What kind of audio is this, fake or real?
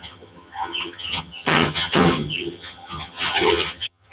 fake